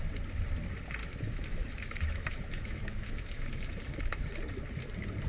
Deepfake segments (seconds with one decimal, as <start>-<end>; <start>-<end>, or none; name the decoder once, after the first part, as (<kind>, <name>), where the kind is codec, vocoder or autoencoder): 1.0-4.2 (autoencoder, DAC-VAE)